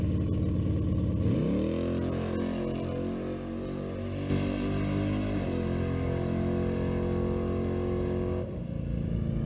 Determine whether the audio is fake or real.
real